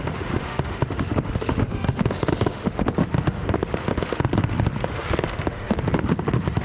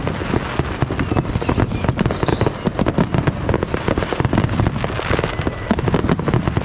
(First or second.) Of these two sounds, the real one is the second